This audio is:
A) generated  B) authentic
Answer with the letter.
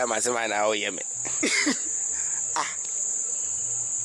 B